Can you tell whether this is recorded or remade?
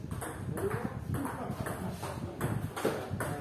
recorded